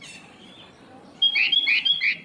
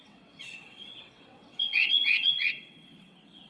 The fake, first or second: second